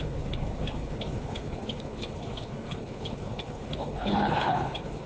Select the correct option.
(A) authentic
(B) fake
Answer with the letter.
B